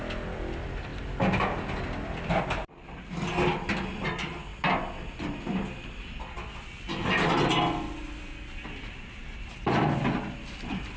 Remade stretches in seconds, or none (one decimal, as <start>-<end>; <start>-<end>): none